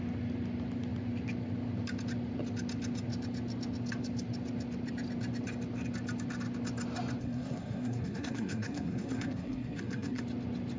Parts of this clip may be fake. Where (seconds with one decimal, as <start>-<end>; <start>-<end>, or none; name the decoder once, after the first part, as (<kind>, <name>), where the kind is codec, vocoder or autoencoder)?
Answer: 7.2-10.2 (codec, SNAC)